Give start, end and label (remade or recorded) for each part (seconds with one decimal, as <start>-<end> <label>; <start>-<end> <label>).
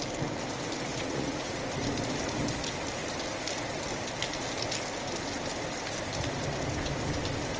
0.0-0.9 recorded; 0.9-1.6 remade; 1.6-7.6 recorded